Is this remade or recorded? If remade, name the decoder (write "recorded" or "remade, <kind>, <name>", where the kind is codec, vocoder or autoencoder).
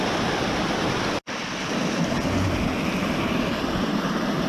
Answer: recorded